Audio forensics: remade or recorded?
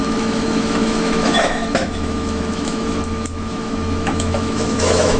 remade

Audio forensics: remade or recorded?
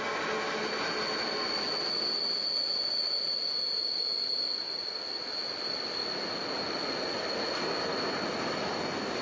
recorded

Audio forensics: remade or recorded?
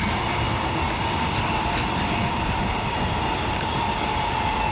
recorded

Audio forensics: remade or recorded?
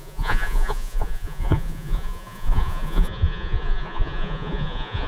remade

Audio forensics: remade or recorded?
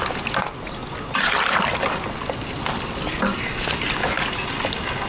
recorded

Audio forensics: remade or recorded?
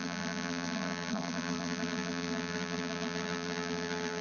remade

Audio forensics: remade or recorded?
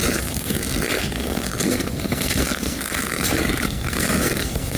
remade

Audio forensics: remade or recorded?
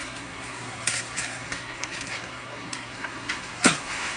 remade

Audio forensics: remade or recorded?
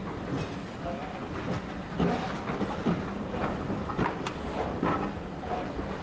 recorded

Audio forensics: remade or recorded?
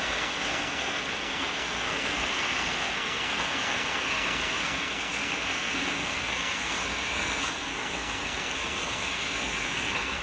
remade